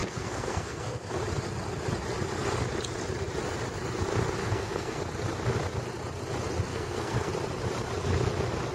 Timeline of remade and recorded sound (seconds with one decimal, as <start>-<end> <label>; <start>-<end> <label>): 0.0-1.2 remade; 1.2-4.4 recorded; 4.4-5.0 remade; 5.0-6.7 recorded; 6.7-7.3 remade; 7.3-8.7 recorded